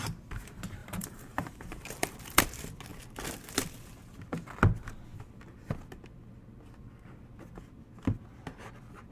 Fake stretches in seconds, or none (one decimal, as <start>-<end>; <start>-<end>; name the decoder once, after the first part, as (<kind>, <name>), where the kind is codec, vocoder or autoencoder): 0.8-2.4 (vocoder, BigVGAN v2)